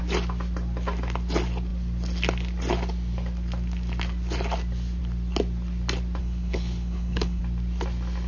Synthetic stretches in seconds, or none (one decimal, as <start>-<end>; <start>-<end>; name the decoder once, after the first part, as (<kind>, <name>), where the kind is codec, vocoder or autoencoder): 6.2-7.4 (codec, HILCodec)